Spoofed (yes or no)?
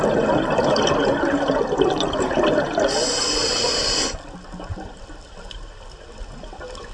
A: no